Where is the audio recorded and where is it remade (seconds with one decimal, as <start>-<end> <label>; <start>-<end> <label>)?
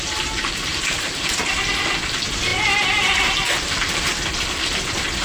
0.0-0.7 recorded; 0.7-1.6 remade; 1.6-5.2 recorded